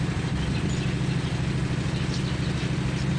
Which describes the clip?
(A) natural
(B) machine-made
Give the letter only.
A